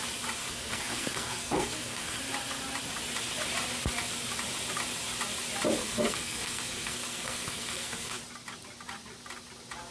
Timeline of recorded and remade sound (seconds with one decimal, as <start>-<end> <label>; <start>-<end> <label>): 0.0-0.4 recorded; 0.4-2.2 remade; 2.2-5.8 recorded; 5.8-8.2 remade; 8.2-9.9 recorded